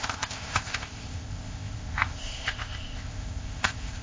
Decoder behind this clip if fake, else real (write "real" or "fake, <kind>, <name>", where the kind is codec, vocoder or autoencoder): fake, codec, ZipCodec